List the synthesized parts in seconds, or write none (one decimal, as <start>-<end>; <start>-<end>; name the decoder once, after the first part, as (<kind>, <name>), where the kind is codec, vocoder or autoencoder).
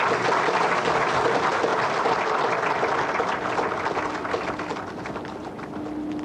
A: none